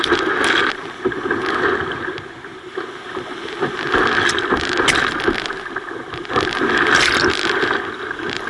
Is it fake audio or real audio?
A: real